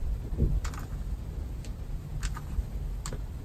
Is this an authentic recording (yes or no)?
yes